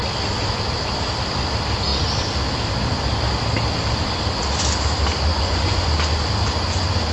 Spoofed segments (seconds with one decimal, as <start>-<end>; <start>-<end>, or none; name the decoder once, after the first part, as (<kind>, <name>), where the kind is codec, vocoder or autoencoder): 5.3-5.9 (vocoder, Vocos)